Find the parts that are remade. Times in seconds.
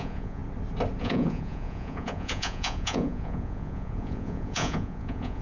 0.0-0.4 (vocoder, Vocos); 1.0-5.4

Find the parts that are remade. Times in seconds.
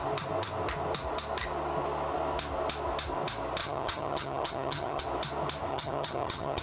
3.6-5.0 (vocoder, HiFi-GAN); 5.7-6.6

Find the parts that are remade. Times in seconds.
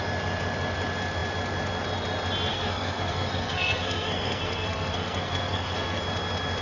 2.5-6.0 (codec, SNAC)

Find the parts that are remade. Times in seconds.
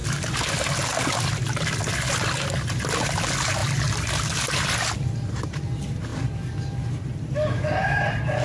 none